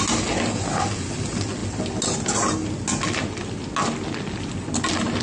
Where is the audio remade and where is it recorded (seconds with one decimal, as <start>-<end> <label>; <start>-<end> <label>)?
0.0-5.2 recorded